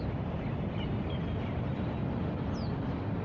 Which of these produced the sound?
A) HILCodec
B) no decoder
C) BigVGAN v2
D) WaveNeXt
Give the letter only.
B